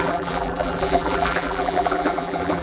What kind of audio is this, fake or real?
fake